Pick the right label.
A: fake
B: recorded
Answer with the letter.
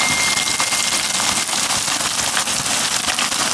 B